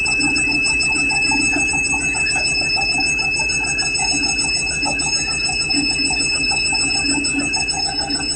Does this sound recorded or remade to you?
recorded